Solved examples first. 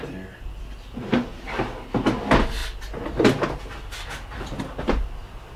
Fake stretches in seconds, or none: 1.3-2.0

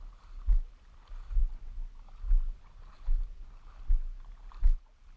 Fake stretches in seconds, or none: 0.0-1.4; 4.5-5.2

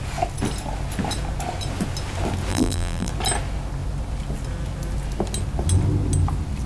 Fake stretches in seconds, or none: 2.5-3.1

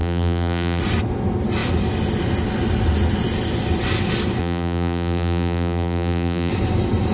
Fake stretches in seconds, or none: 0.0-0.8; 4.4-6.5